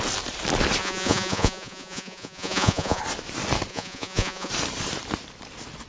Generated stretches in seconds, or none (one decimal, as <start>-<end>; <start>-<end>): 0.8-3.0; 3.7-4.5